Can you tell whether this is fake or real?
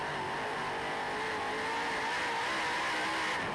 real